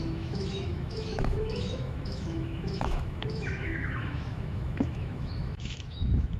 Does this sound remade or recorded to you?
remade